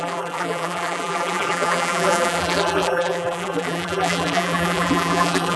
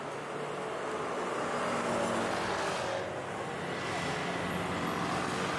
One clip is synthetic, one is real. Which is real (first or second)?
second